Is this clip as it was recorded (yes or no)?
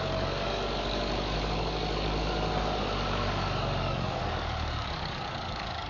no